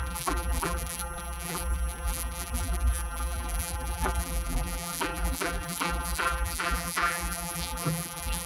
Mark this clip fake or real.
fake